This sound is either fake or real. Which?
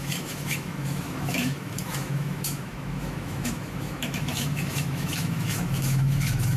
fake